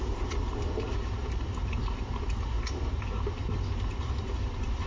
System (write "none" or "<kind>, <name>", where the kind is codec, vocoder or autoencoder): vocoder, BigVGAN v2